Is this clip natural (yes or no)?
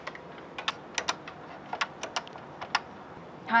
yes